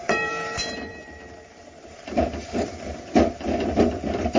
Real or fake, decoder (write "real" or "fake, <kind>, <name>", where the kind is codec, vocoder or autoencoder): fake, vocoder, BigVGAN v2